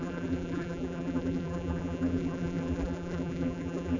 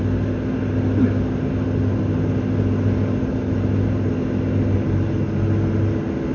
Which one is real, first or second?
second